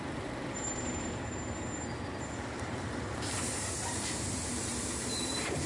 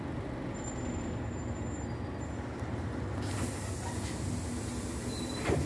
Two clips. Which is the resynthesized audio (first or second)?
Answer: first